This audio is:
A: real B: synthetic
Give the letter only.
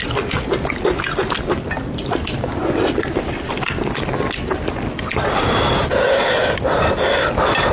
A